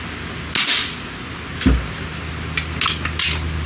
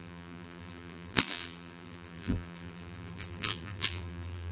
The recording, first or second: first